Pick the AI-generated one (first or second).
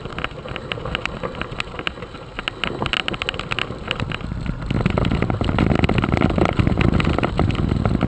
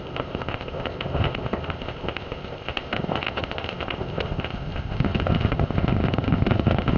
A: second